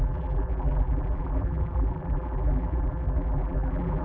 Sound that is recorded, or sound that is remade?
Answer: remade